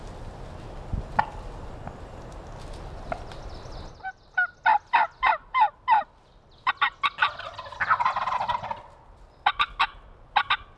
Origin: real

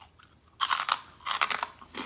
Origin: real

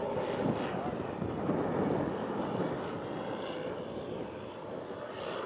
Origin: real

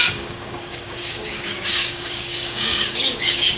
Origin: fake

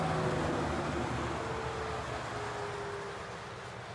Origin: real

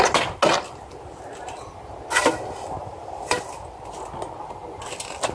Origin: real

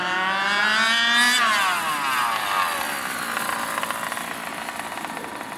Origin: real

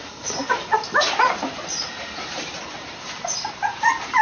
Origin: fake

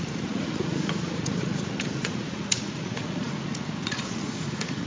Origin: fake